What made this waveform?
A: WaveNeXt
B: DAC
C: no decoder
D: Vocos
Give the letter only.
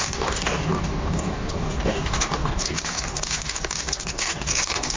B